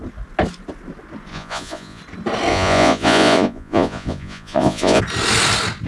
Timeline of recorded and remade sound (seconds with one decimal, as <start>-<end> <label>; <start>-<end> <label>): 0.0-1.3 recorded; 1.3-2.0 remade; 2.0-2.5 recorded; 2.5-5.0 remade; 5.0-5.9 recorded